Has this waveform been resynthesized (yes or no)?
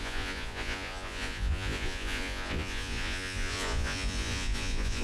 yes